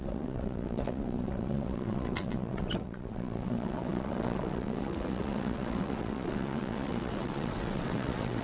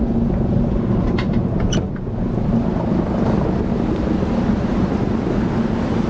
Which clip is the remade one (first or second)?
first